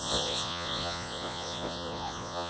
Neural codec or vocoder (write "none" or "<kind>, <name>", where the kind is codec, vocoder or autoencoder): vocoder, Vocos